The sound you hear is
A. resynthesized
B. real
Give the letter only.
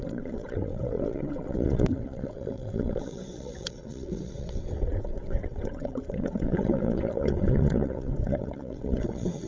A